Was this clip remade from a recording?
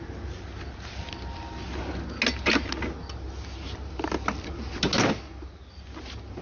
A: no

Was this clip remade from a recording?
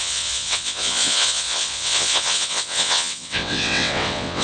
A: yes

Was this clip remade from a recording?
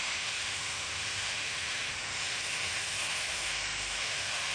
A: yes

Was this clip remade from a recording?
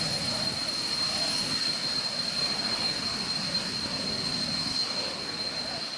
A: no